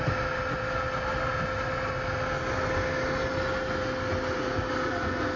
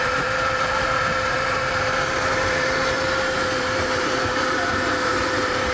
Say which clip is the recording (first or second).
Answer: first